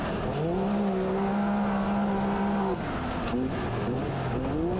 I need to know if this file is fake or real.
real